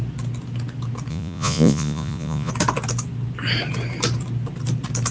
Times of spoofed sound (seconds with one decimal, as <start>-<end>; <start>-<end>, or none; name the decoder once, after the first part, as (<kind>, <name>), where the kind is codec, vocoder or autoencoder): 1.1-2.5 (vocoder, Vocos)